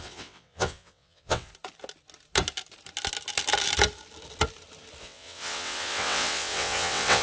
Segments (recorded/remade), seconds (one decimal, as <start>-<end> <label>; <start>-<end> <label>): 0.0-1.5 remade; 1.5-5.0 recorded; 5.0-7.2 remade